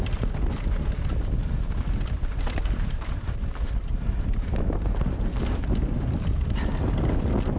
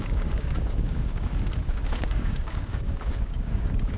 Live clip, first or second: first